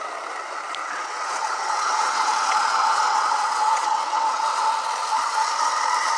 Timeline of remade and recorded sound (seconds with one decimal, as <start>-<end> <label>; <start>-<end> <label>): 0.0-0.8 recorded; 0.8-4.5 remade; 4.5-6.2 recorded